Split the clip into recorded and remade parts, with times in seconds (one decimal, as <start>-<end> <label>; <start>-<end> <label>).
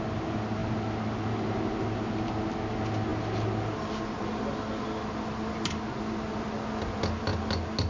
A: 0.0-7.9 recorded